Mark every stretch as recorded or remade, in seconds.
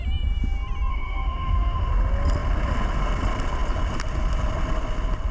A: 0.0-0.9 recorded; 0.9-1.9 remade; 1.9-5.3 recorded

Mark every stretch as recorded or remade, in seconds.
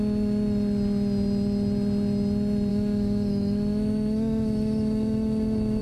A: 0.0-2.7 recorded; 2.7-5.8 remade